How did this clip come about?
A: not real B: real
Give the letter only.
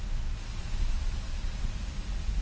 B